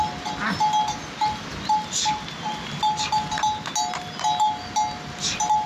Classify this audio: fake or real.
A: real